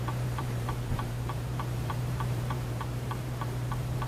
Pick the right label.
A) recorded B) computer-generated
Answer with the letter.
B